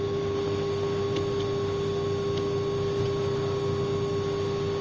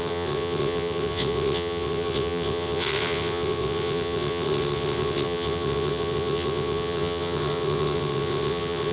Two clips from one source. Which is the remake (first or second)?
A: second